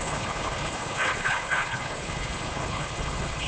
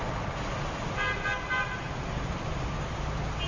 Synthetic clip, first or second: first